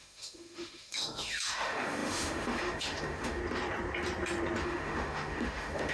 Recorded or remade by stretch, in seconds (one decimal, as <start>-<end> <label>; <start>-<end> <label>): 0.0-3.4 remade; 3.4-4.6 recorded; 4.6-5.9 remade